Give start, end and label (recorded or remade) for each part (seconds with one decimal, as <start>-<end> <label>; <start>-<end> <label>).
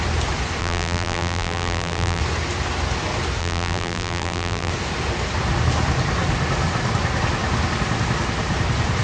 0.0-0.6 recorded; 0.6-2.2 remade; 2.2-3.4 recorded; 3.4-4.7 remade; 4.7-9.0 recorded